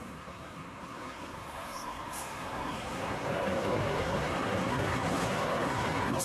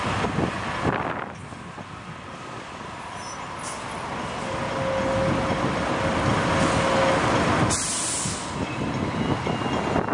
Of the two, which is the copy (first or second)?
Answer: first